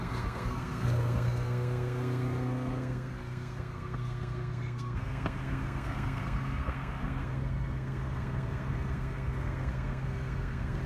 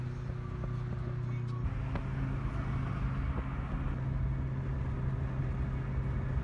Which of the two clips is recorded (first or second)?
second